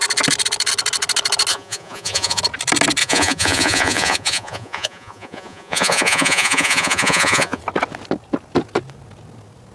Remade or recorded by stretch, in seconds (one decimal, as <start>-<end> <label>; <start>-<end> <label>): 0.0-1.5 recorded; 1.5-2.4 remade; 2.4-3.0 recorded; 3.0-7.6 remade; 7.6-9.7 recorded